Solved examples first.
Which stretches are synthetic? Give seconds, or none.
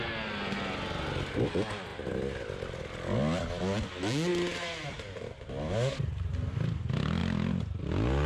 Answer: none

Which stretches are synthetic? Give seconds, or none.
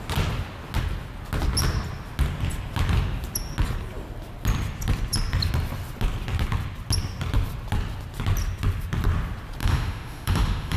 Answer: 9.6-10.8 (autoencoder, DAC-VAE)